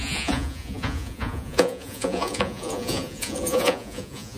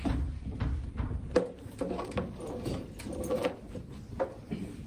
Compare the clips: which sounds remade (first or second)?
first